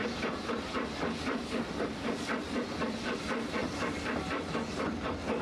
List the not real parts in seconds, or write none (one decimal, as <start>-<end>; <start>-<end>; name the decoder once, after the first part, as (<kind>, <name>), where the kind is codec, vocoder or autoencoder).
0.0-3.2 (vocoder, BigVGAN v2); 3.6-4.4